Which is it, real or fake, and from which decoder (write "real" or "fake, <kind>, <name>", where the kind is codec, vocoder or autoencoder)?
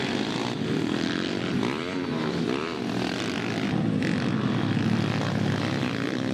real